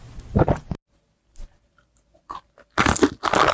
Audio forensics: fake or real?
real